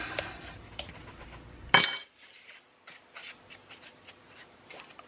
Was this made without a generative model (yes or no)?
yes